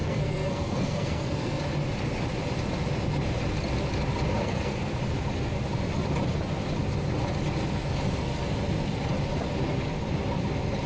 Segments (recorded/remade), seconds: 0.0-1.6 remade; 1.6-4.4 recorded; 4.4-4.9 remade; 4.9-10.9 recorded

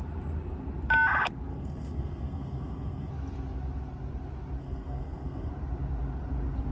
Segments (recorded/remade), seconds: 0.0-1.5 recorded; 1.5-3.1 remade; 3.1-4.6 recorded; 4.6-5.5 remade; 5.5-6.7 recorded

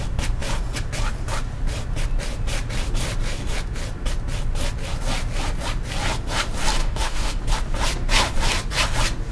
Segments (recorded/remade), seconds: 0.0-6.8 recorded; 6.8-7.4 remade; 7.4-9.3 recorded

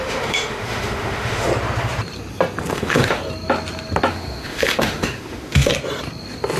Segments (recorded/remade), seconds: 0.0-1.5 remade; 1.5-2.7 recorded; 2.7-3.2 remade; 3.2-4.1 recorded; 4.1-5.7 remade; 5.7-6.6 recorded

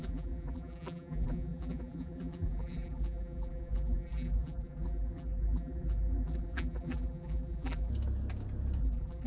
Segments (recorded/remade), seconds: 0.0-7.9 remade; 7.9-8.8 recorded; 8.8-9.3 remade